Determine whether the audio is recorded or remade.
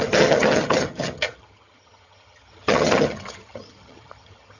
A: remade